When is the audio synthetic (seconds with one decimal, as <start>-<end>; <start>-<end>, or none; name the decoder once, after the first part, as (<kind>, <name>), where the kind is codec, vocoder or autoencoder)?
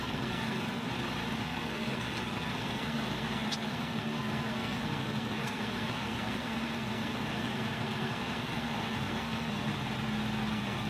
0.0-0.9 (codec, SNAC); 1.4-9.7; 10.5-10.9